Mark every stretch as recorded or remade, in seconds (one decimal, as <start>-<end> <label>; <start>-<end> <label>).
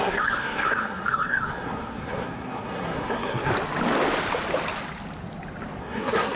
0.0-3.5 remade; 3.5-5.8 recorded; 5.8-6.4 remade